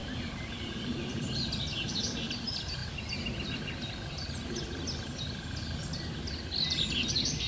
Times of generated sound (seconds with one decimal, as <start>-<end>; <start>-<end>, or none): 0.0-2.0